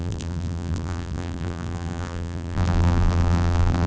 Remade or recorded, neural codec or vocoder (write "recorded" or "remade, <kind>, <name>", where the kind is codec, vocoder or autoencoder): remade, vocoder, BigVGAN v2